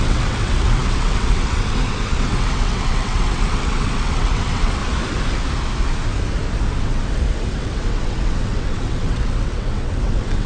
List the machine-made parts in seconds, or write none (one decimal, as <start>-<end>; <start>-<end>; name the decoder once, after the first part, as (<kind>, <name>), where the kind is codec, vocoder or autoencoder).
0.0-4.8 (vocoder, WaveNeXt); 6.8-10.5